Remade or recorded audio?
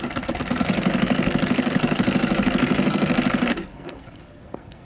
remade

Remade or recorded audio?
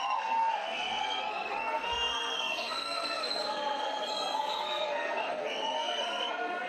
remade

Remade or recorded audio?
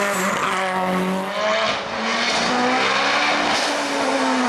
recorded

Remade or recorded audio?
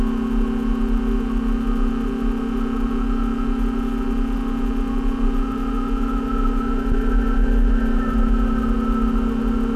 recorded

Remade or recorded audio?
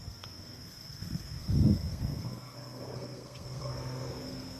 remade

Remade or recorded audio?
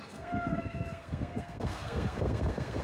remade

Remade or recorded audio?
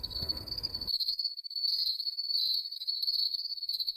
remade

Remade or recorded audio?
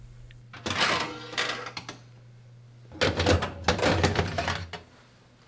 recorded